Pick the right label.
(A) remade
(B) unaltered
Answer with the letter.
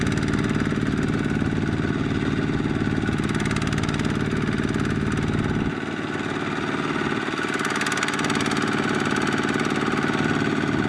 B